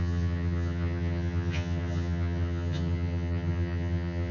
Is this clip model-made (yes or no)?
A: yes